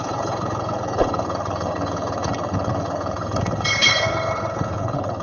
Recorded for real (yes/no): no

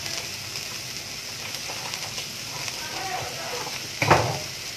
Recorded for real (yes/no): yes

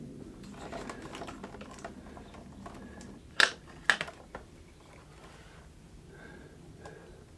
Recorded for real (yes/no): yes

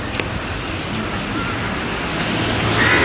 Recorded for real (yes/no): yes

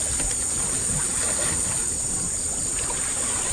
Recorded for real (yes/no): yes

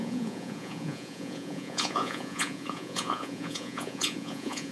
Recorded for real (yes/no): no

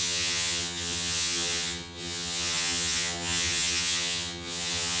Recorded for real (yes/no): no